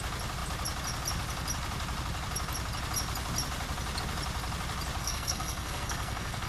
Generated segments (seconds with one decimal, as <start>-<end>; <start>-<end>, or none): 5.0-6.5